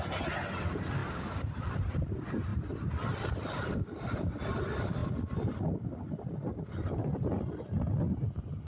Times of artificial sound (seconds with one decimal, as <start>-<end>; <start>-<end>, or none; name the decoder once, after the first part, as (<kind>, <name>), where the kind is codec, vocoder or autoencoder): none